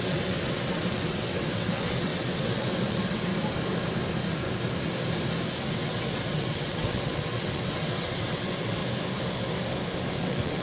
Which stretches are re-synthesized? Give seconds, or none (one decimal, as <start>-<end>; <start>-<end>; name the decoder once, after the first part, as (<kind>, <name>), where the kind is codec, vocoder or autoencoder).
0.0-3.3 (vocoder, WaveNeXt); 5.6-8.8; 10.2-10.6